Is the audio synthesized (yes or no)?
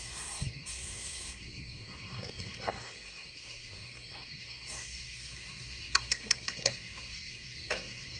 yes